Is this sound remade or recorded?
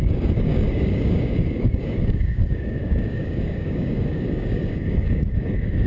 remade